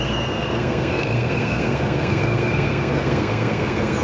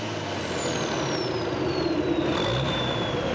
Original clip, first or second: second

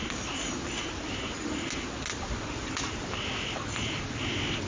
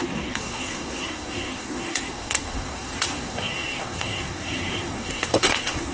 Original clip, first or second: first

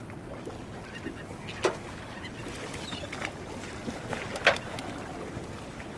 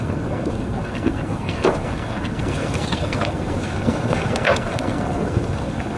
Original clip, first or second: first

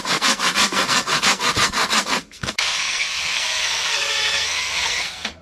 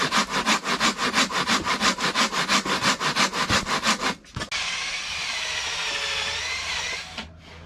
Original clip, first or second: second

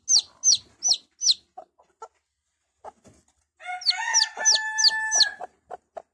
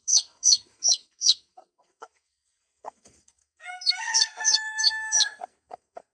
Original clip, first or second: first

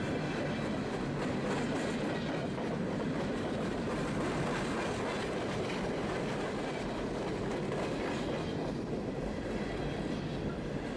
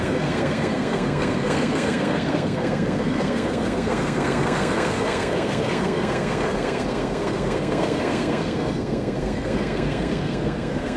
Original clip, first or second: first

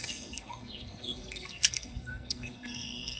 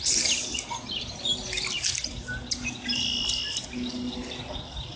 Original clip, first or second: second